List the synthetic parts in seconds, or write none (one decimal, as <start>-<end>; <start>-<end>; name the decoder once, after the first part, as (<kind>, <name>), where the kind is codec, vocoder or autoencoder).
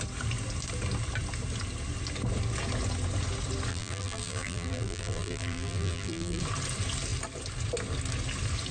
3.7-6.4 (vocoder, BigVGAN v2)